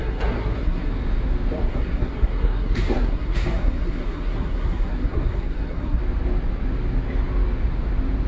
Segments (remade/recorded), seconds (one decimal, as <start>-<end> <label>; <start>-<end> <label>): 0.0-0.9 remade; 0.9-1.7 recorded; 1.7-6.0 remade; 6.0-8.3 recorded